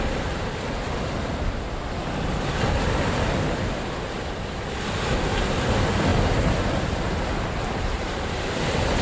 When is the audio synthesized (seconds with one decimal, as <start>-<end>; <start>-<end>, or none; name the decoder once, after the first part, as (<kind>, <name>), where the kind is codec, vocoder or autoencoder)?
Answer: none